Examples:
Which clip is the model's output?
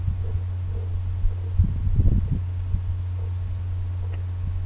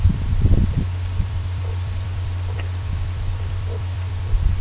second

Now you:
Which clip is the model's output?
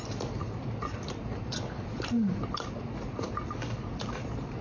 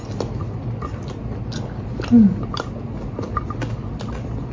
first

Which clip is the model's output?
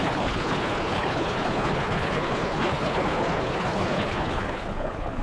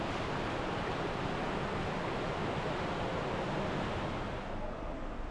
first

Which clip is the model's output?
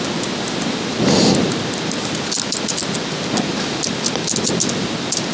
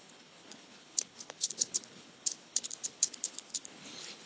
second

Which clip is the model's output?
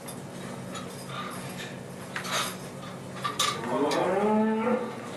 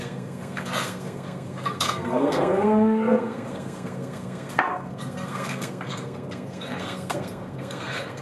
second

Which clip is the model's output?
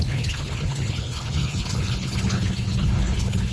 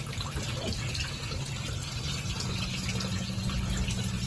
first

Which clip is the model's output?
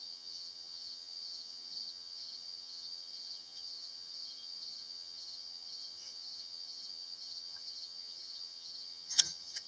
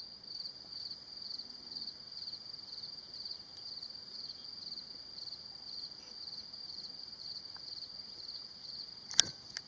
first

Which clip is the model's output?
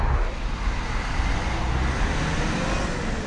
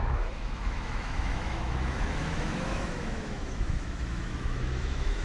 second